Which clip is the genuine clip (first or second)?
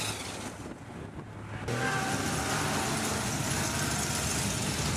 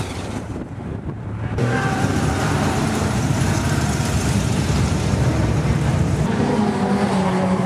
first